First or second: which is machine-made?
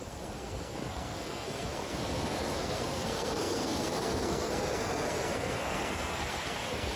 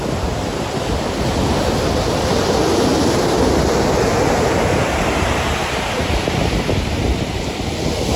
first